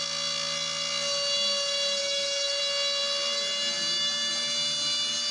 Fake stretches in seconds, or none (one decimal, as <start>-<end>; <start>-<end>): 2.0-2.6